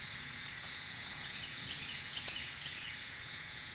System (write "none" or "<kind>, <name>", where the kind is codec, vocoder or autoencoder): vocoder, Vocos